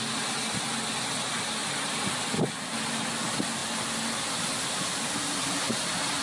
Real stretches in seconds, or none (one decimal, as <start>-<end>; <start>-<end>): 0.0-6.2